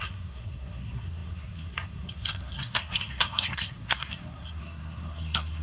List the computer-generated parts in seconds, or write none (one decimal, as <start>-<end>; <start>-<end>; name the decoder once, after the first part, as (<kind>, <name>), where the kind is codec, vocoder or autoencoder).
0.0-5.6 (codec, SNAC)